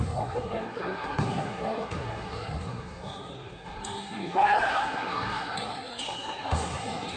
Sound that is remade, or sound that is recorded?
remade